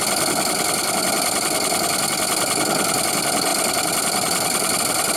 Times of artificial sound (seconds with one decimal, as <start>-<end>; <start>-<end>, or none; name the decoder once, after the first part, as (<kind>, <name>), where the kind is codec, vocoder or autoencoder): none